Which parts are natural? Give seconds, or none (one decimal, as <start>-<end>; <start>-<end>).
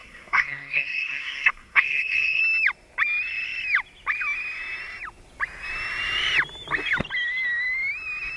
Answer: 2.4-8.4